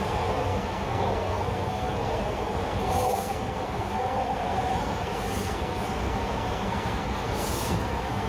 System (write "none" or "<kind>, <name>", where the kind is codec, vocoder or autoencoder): codec, SNAC